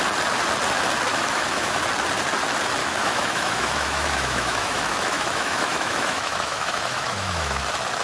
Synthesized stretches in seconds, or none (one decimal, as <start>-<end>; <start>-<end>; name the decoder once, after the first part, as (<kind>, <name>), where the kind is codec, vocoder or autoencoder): 1.1-1.8 (autoencoder, DAC-VAE); 2.8-7.6